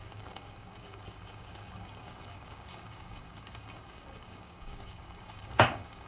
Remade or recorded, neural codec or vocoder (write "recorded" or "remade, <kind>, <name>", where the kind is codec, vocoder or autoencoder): remade, codec, DAC